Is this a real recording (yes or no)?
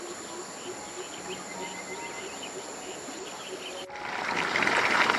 yes